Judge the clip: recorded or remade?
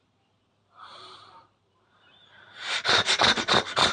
remade